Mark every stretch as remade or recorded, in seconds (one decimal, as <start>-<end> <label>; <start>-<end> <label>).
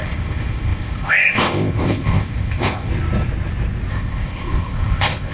0.0-2.9 remade; 2.9-3.9 recorded; 3.9-5.3 remade